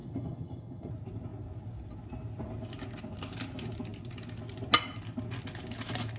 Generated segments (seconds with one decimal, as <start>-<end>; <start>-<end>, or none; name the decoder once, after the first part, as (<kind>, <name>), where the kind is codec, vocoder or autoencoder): 0.0-0.9 (vocoder, HiFi-GAN)